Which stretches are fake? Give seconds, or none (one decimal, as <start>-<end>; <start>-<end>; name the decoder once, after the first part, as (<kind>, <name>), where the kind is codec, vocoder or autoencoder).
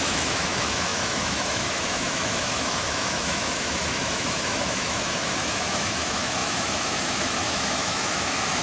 0.0-8.6 (autoencoder, DAC-VAE)